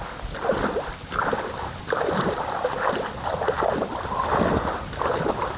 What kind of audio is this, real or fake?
real